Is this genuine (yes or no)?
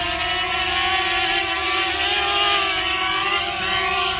yes